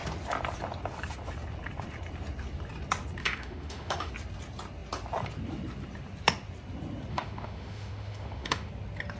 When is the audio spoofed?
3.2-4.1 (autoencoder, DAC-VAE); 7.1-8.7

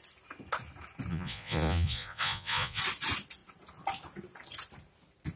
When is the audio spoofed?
1.1-2.8 (vocoder, Vocos)